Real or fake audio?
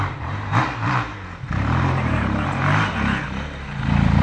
fake